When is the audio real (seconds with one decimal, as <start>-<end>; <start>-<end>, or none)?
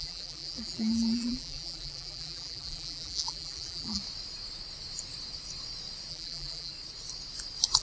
4.0-6.1; 6.7-7.8